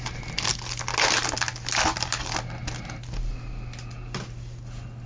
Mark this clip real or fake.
real